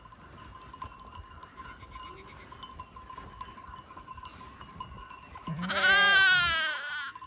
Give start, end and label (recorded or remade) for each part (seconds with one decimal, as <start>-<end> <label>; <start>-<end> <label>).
0.0-7.3 recorded

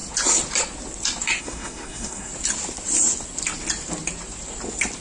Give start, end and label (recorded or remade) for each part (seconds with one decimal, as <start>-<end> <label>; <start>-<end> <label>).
0.0-1.4 recorded; 1.4-2.3 remade; 2.3-5.0 recorded